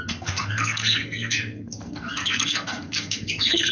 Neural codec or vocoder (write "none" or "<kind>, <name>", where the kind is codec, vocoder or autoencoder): codec, SNAC